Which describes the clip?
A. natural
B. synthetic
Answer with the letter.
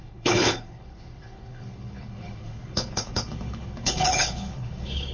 B